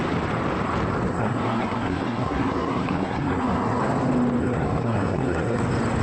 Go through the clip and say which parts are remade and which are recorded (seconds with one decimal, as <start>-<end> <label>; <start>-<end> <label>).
0.0-1.1 recorded; 1.1-3.8 remade; 3.8-4.4 recorded; 4.4-5.6 remade; 5.6-6.0 recorded